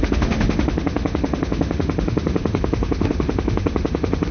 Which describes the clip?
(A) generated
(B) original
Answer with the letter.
A